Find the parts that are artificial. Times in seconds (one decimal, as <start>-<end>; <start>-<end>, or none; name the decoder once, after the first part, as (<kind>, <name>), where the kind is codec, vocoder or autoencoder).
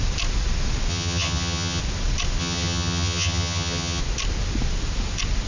0.9-1.8 (vocoder, HiFi-GAN); 2.4-4.0